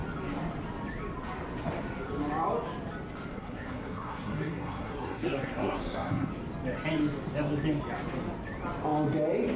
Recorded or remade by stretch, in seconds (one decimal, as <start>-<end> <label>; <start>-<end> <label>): 0.0-3.3 recorded; 3.3-6.3 remade; 6.3-9.6 recorded

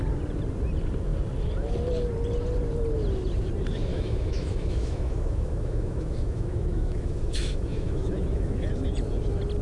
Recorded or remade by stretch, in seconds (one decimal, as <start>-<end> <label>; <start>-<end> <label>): 0.0-3.9 recorded; 3.9-8.7 remade; 8.7-9.6 recorded

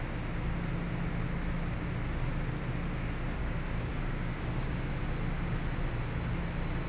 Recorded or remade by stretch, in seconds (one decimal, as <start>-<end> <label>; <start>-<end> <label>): 0.0-3.4 recorded; 3.4-5.0 remade; 5.0-6.9 recorded